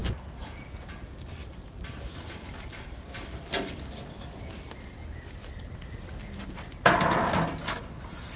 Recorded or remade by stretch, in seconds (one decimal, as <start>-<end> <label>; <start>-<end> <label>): 0.0-8.4 recorded